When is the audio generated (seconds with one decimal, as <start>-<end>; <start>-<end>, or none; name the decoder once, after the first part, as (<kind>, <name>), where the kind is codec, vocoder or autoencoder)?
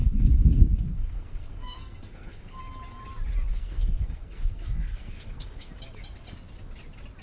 0.0-2.6 (codec, SNAC); 3.5-5.7